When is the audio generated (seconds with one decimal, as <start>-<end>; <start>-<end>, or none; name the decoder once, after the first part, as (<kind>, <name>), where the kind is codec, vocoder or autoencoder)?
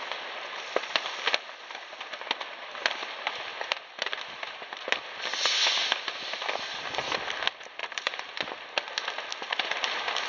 3.5-4.9 (vocoder, BigVGAN v2); 7.8-8.5